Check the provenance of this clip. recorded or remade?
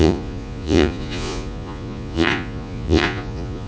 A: remade